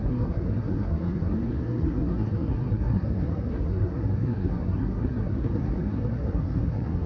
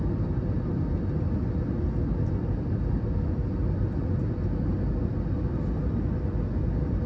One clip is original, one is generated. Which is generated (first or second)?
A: first